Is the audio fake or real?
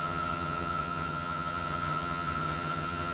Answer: fake